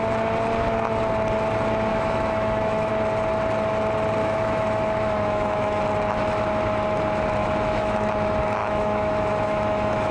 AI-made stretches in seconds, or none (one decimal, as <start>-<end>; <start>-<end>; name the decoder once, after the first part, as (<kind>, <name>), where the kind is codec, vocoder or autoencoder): 1.9-2.9 (autoencoder, DAC-VAE); 4.2-5.8; 7.4-8.1; 8.6-10.1